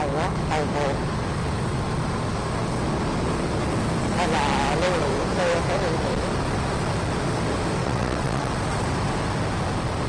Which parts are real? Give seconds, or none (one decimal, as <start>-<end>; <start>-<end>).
0.0-7.8; 8.5-10.1